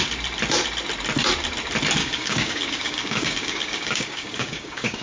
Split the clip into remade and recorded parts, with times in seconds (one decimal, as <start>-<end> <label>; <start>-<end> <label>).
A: 0.0-2.0 recorded; 2.0-5.0 remade